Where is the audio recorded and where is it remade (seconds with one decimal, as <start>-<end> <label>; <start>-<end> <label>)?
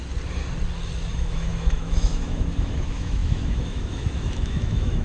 0.0-1.1 recorded; 1.1-5.0 remade